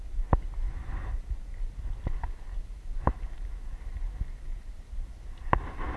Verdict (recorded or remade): recorded